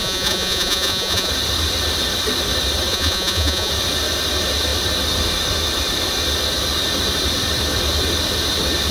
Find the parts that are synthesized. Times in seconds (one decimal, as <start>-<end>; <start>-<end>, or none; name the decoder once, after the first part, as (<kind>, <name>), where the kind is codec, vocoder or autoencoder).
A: 0.0-1.3 (vocoder, Vocos); 2.9-3.7

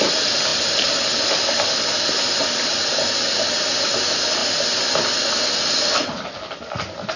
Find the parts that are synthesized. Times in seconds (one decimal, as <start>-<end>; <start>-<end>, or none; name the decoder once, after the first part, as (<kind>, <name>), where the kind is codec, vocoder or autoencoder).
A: none